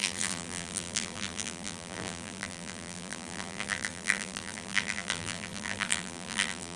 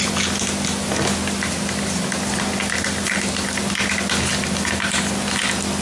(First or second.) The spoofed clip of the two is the first